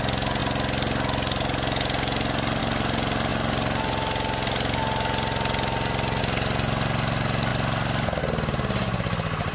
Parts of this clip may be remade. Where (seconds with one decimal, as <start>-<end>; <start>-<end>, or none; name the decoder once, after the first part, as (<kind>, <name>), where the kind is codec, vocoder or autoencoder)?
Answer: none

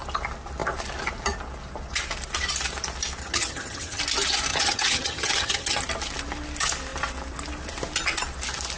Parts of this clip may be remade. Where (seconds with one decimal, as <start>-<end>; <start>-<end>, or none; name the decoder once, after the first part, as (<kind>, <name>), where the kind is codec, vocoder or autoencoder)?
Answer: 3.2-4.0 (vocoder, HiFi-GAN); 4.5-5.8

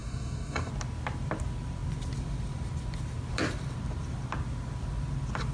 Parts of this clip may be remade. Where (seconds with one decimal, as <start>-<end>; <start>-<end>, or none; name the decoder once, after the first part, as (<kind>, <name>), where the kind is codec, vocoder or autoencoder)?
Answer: 0.0-0.7 (codec, DAC)

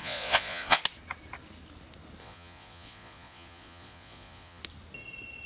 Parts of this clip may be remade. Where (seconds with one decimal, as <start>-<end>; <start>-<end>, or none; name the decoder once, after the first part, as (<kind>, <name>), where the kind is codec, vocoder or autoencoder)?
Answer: 0.0-0.8 (vocoder, Vocos); 2.2-4.6

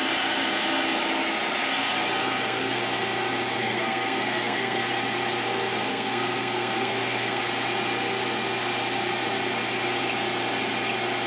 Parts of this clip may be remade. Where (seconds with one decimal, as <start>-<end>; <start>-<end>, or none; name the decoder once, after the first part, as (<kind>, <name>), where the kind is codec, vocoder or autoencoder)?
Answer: 2.2-2.8 (codec, SNAC); 3.6-4.8; 5.9-7.4